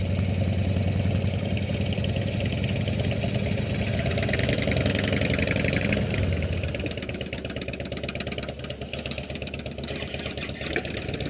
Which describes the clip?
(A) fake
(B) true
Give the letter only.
B